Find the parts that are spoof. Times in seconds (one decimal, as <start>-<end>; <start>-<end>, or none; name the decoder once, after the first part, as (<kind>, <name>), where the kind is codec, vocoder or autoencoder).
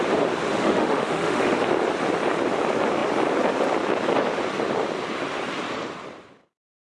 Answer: 0.5-1.5 (autoencoder, DAC-VAE)